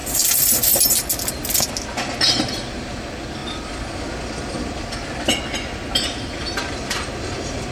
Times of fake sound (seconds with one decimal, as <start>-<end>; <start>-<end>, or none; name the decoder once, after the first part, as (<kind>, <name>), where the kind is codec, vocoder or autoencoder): none